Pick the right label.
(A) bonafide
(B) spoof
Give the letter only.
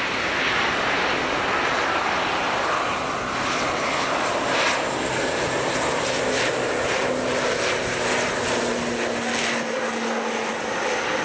A